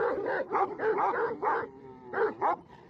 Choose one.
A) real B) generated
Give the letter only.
A